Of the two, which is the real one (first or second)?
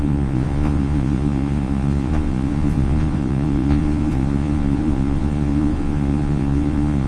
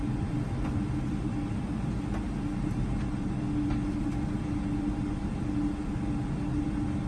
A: second